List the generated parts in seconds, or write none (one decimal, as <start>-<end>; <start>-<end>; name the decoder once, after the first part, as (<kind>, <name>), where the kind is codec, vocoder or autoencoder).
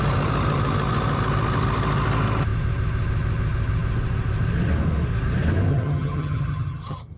5.7-7.2 (vocoder, HiFi-GAN)